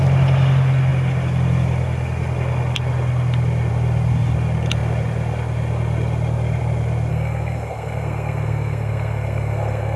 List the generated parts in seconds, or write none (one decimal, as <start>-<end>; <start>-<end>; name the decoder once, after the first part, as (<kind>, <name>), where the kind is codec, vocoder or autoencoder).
7.1-10.0 (codec, SNAC)